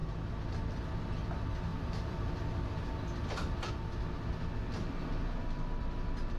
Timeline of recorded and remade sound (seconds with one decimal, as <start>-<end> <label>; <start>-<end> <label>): 0.0-1.7 recorded; 1.7-3.7 remade; 3.7-4.6 recorded; 4.6-5.4 remade; 5.4-6.4 recorded